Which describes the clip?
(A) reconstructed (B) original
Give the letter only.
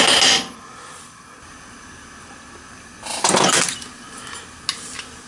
B